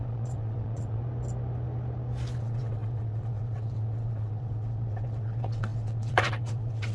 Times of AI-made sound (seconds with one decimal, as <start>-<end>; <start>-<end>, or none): 0.0-1.0; 2.4-6.9